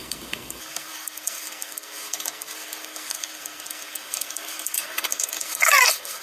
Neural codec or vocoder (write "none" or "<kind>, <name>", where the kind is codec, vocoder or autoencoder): codec, SNAC